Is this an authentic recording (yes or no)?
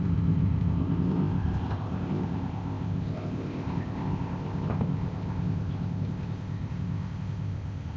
no